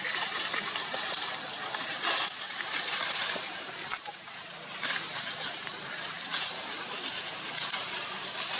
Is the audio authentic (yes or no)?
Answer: no